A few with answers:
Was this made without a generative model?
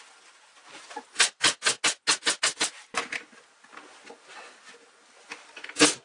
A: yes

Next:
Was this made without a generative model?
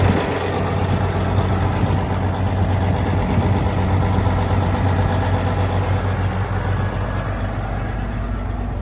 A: yes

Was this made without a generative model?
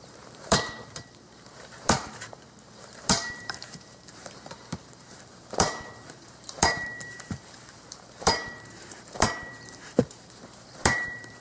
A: no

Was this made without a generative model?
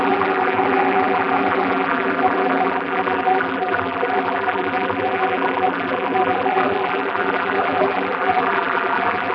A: no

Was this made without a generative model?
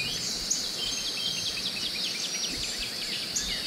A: yes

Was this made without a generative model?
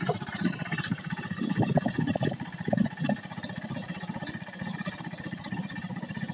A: no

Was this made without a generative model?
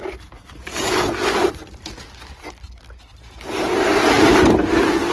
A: yes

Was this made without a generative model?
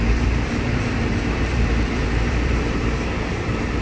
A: no